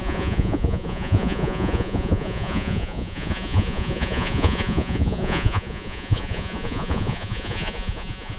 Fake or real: fake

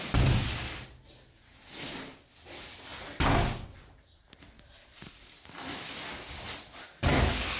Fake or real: real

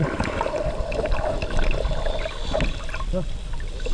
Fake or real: fake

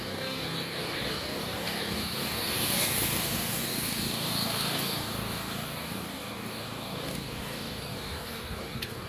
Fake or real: fake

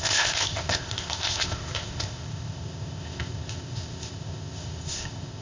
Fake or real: fake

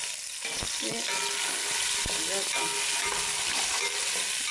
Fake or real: real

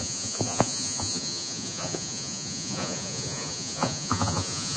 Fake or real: fake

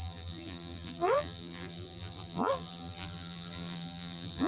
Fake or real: fake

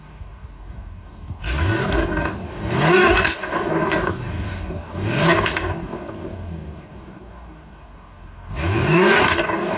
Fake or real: fake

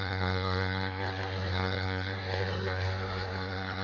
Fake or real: fake